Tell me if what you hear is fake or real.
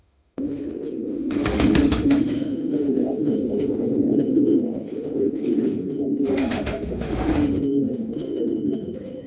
fake